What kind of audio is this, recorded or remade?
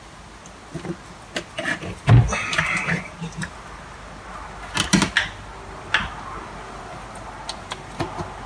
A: recorded